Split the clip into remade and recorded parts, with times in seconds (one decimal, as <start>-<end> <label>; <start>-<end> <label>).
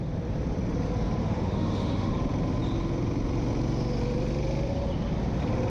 0.0-1.2 recorded; 1.2-2.1 remade; 2.1-5.7 recorded